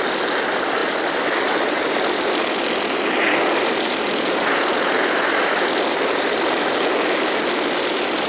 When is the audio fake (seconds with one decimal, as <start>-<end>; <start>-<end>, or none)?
0.8-1.6